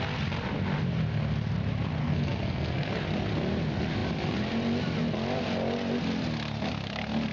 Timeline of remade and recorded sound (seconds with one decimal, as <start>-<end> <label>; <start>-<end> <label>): 0.0-2.0 recorded; 2.0-2.9 remade; 2.9-7.3 recorded